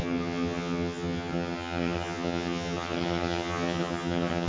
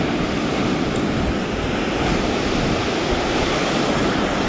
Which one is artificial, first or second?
first